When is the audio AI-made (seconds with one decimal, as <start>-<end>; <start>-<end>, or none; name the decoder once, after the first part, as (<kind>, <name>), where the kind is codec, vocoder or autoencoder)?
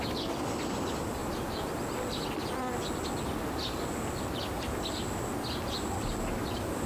none